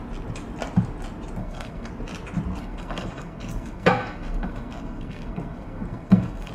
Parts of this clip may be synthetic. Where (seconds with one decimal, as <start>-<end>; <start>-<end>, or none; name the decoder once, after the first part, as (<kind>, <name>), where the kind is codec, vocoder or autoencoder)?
1.4-1.9 (codec, SNAC); 2.6-6.5